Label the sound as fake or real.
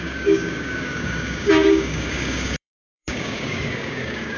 fake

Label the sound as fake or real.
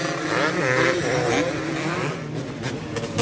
real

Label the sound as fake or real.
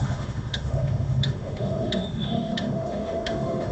fake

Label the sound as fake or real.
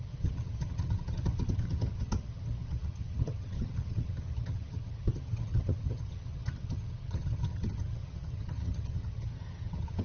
fake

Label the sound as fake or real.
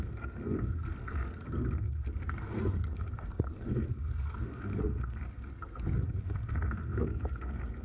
fake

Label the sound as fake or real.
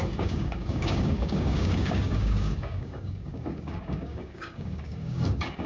fake